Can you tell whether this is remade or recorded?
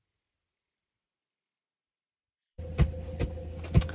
recorded